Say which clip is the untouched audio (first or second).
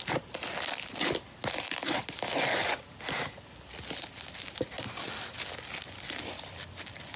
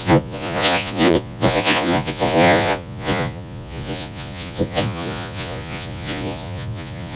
first